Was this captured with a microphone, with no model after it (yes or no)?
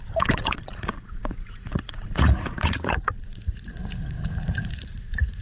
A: no